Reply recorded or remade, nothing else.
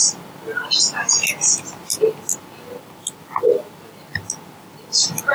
recorded